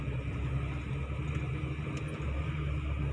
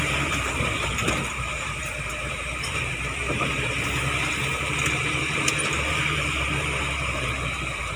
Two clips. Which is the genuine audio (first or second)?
first